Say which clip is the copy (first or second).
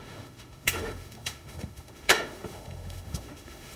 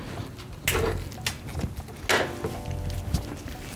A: first